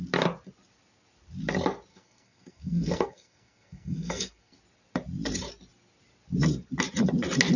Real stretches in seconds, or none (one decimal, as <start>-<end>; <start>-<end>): 0.0-1.9; 4.6-7.6

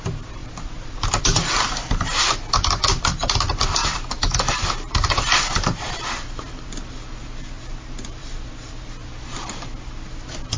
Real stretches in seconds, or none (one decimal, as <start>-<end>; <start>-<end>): 0.0-0.4; 1.2-3.8; 6.8-8.2; 8.9-10.6